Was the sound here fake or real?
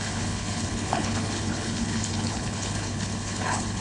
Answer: fake